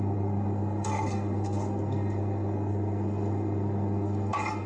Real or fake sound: fake